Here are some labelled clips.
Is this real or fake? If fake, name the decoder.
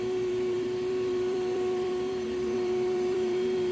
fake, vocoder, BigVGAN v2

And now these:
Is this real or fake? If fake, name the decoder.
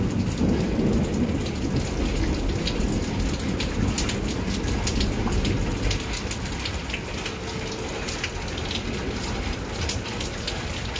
real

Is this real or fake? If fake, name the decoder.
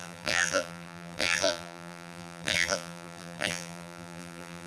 fake, vocoder, BigVGAN v2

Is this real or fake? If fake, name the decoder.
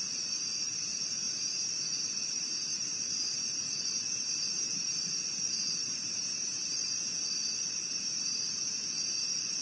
fake, vocoder, BigVGAN v2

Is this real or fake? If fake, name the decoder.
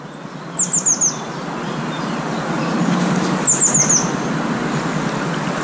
real